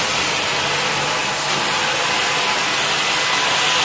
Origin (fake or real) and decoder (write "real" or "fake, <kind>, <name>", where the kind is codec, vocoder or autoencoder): real